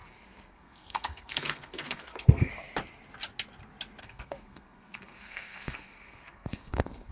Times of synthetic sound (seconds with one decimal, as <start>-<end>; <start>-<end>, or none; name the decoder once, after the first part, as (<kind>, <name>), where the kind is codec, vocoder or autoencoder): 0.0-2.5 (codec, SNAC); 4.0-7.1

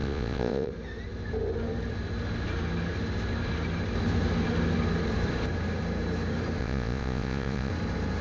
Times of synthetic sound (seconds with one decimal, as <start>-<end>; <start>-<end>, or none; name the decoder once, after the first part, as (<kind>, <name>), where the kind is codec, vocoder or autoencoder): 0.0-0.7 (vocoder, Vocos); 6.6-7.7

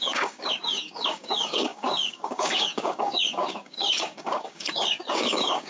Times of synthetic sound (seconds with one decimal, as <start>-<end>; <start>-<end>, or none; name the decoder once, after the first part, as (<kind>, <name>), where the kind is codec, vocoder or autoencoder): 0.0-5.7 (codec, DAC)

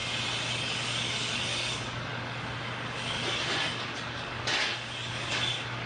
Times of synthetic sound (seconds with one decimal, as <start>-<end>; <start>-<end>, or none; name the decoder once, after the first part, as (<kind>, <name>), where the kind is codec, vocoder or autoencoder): 0.5-5.9 (codec, DAC)

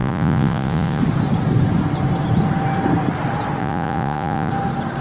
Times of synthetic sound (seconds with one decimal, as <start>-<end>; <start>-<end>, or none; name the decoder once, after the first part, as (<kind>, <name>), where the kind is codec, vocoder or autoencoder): 0.0-1.0 (vocoder, Vocos); 3.6-4.5

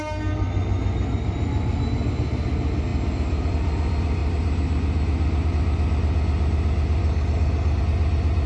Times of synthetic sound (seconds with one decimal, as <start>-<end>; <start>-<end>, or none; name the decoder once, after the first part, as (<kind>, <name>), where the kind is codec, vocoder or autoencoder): 7.0-7.8 (codec, DAC)